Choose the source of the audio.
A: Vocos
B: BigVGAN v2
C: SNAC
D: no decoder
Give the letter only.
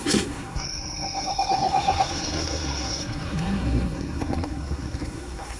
C